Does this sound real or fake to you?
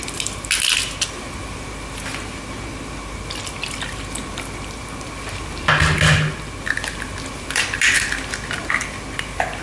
real